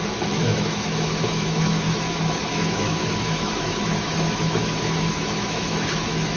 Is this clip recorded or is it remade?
remade